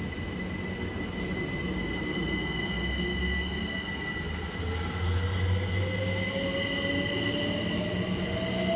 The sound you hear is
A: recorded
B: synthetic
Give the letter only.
A